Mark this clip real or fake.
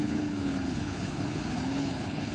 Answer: fake